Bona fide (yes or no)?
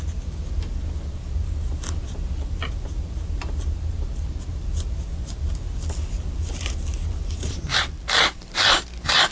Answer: yes